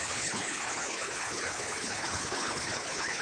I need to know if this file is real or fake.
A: fake